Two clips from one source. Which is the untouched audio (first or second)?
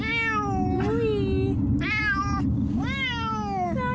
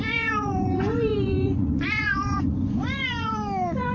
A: first